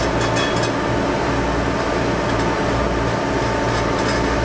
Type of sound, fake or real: real